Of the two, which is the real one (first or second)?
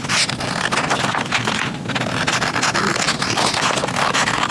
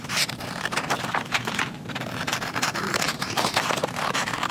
first